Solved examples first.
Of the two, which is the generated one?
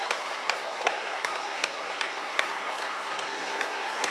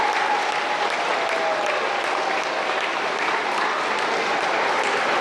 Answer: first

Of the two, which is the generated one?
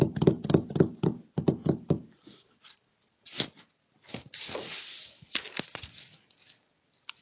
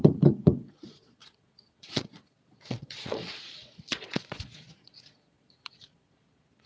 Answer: second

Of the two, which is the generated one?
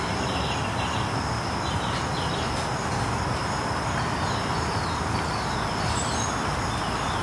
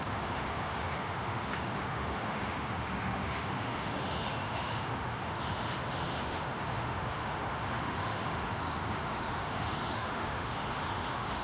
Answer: second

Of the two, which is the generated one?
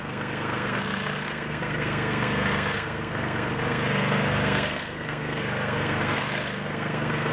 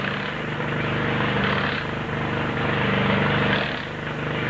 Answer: first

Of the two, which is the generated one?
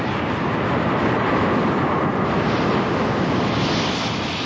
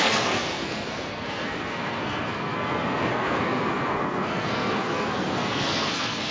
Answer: second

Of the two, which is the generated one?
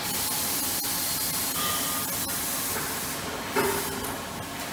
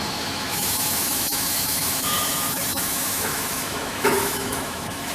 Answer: second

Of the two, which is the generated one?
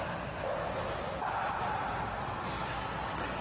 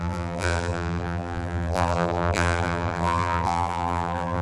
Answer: second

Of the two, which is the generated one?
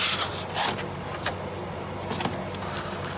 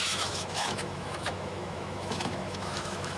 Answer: second